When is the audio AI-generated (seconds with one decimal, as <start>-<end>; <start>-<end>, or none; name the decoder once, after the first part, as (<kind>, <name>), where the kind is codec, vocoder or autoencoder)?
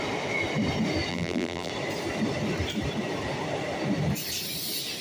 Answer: 1.1-1.7 (vocoder, BigVGAN v2)